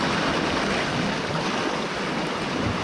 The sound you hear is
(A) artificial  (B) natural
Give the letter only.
B